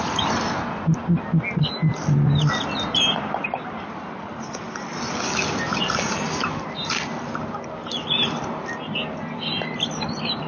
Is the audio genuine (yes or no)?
yes